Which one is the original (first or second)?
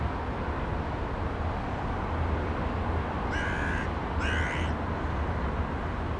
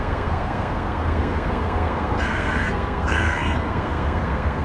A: first